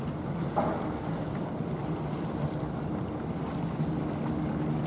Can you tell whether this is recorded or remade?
remade